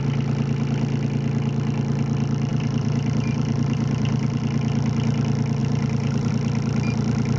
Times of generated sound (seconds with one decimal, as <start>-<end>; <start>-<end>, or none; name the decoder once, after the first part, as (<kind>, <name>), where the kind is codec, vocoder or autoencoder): 2.5-4.4 (vocoder, BigVGAN v2); 5.6-6.3